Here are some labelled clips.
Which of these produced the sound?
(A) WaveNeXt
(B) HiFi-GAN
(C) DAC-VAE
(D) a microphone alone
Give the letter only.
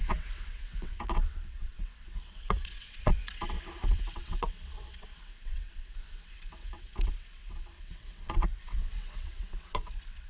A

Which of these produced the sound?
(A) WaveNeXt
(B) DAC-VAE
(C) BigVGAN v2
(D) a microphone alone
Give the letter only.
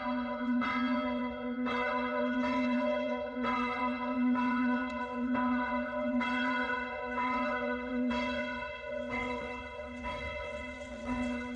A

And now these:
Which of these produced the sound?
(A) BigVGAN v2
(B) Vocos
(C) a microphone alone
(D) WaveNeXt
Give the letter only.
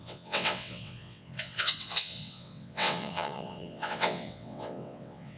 D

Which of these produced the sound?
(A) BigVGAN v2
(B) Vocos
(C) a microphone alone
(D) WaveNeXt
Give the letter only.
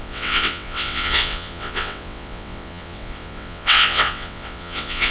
D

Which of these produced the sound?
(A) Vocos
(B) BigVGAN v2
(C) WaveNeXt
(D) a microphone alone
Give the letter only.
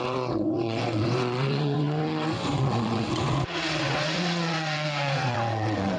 C